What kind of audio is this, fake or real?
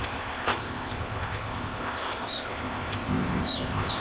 fake